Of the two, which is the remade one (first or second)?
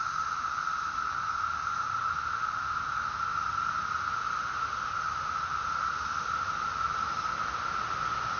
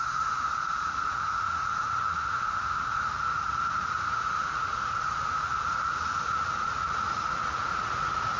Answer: second